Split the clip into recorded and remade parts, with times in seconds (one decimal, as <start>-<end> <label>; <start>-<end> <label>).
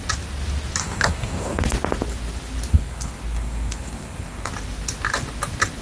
0.0-0.8 recorded; 0.8-1.6 remade; 1.6-2.7 recorded; 2.7-4.5 remade; 4.5-5.8 recorded